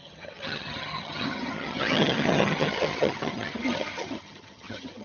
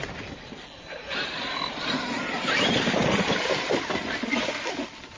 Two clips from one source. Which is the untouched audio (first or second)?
second